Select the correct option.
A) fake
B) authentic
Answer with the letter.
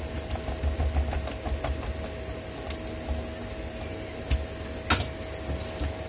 B